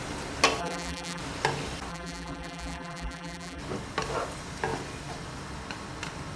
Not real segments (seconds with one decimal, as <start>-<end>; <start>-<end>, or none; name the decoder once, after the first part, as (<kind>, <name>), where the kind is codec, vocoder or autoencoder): 0.6-1.2 (vocoder, BigVGAN v2); 1.9-3.6